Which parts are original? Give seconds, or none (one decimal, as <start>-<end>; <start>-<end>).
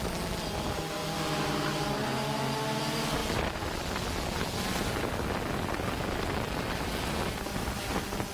0.0-8.3